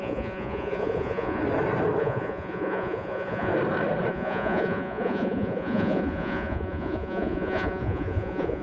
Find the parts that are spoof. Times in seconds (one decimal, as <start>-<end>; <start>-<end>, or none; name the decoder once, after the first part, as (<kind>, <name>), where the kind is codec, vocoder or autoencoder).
0.0-1.4 (vocoder, Vocos); 2.0-3.5; 4.1-8.6